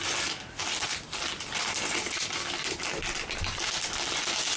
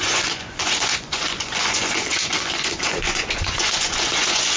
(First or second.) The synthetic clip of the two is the second